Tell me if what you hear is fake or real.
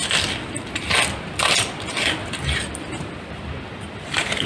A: real